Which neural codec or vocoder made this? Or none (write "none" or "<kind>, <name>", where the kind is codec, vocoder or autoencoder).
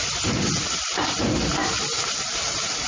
none